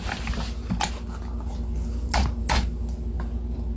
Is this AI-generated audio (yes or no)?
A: no